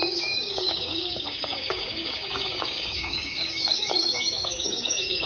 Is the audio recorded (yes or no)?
no